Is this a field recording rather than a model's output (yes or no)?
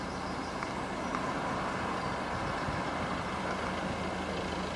yes